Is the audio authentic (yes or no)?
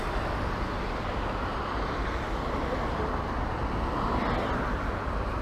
yes